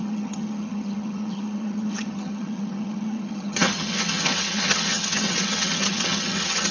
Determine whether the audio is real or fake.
fake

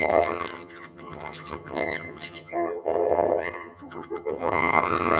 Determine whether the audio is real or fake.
fake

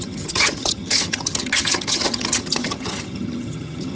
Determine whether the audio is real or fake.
fake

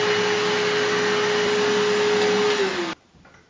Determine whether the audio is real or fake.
real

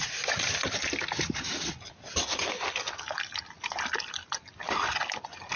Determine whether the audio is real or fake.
real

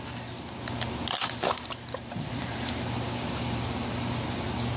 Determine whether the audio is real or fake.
real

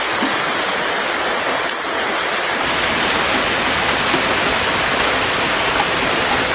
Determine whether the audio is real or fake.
real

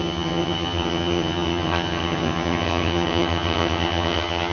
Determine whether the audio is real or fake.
fake